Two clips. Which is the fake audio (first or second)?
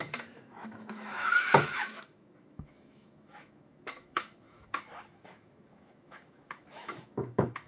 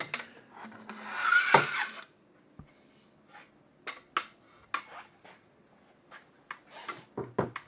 first